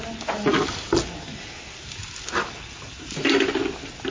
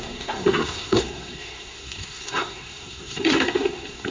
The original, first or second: first